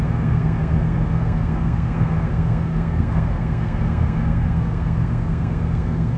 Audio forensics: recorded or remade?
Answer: remade